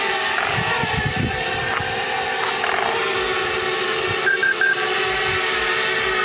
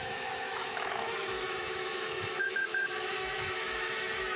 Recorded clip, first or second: first